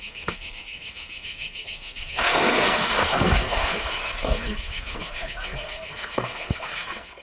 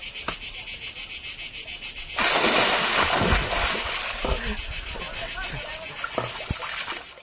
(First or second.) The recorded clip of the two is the second